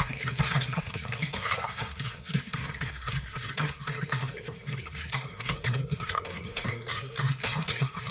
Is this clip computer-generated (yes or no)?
yes